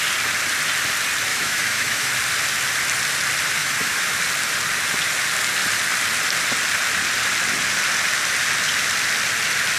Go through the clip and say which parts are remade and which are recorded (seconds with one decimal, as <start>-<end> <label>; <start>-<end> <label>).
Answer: 0.0-1.3 recorded; 1.3-2.1 remade; 2.1-3.6 recorded; 3.6-4.2 remade; 4.2-9.8 recorded